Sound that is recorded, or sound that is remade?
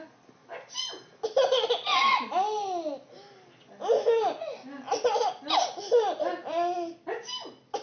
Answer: recorded